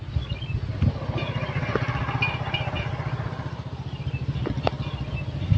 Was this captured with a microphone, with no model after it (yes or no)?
yes